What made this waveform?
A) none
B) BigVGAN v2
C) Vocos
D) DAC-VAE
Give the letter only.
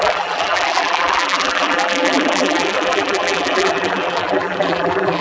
B